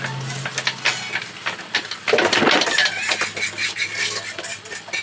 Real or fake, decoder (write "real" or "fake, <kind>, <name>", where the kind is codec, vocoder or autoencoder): real